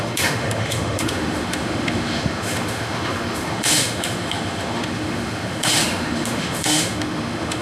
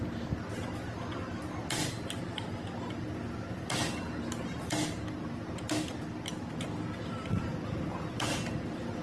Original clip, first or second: second